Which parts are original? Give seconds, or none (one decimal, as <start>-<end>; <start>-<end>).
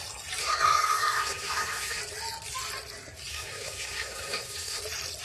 0.0-0.4; 2.0-3.3; 4.8-5.2